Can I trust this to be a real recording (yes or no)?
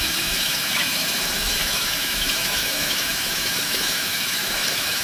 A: no